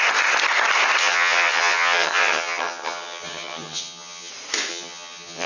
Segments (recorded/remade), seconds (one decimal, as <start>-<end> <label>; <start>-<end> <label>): 0.0-1.0 recorded; 1.0-4.3 remade; 4.3-4.7 recorded; 4.7-5.5 remade